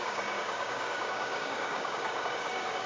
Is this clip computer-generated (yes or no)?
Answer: yes